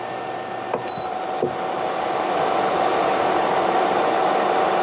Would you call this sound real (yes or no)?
yes